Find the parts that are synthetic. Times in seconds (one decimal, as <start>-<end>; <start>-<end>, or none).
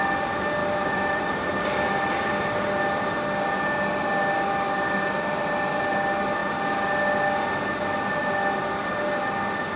0.6-1.2